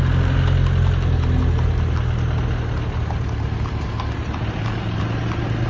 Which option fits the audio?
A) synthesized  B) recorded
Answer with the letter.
B